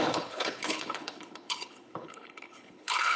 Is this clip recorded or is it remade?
remade